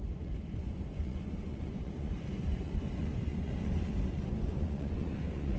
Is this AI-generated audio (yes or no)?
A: yes